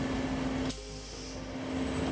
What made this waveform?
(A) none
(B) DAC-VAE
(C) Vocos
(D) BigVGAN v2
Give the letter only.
A